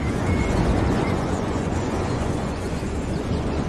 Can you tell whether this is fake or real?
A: fake